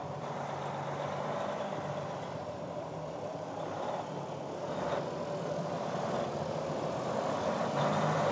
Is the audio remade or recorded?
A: recorded